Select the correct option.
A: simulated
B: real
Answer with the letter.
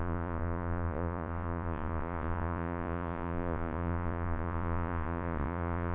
A